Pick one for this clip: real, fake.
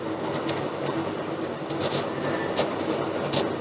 real